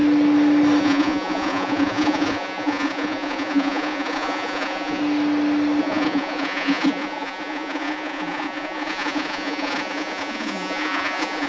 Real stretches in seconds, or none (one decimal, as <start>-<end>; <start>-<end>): 0.0-0.8; 5.0-5.8